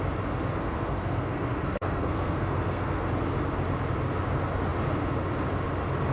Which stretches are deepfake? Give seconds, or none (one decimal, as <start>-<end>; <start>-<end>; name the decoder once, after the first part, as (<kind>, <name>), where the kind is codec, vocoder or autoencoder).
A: 0.6-3.1 (codec, SNAC)